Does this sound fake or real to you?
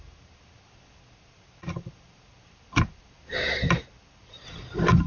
real